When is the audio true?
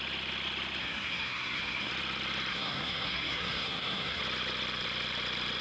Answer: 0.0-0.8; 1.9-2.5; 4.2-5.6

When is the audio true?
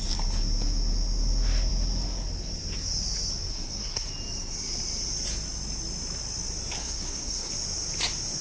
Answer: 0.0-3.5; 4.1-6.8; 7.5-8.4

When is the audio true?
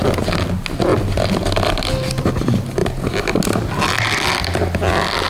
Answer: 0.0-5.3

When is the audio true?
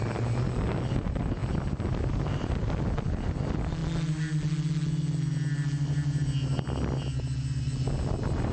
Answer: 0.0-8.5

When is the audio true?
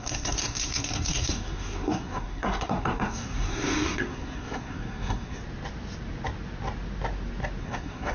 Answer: 5.4-7.6